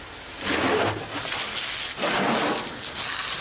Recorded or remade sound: recorded